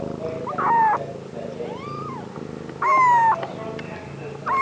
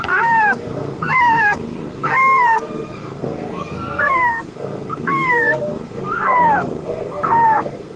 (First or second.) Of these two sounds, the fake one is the second